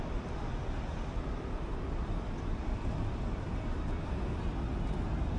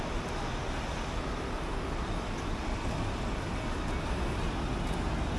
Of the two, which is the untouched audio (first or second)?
second